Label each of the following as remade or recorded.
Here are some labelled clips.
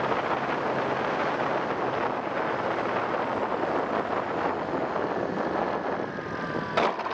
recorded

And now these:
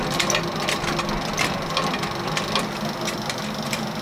recorded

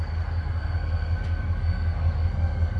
remade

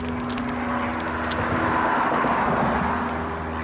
recorded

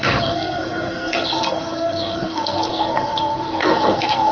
remade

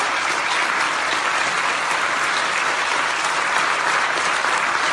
remade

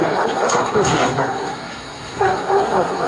remade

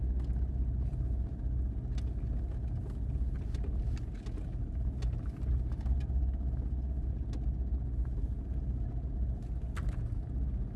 recorded